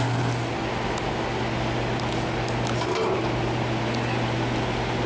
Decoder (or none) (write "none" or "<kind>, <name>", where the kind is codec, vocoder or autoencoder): none